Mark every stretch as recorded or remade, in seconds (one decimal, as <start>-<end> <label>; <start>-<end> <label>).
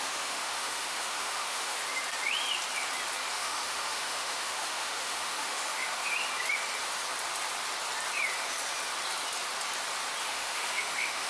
0.0-1.8 remade; 1.8-3.3 recorded; 3.3-6.0 remade; 6.0-10.2 recorded; 10.2-11.3 remade